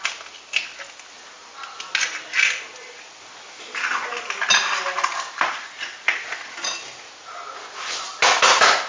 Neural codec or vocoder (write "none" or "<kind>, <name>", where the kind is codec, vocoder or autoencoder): none